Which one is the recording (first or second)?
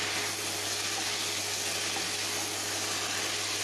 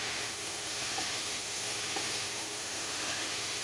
first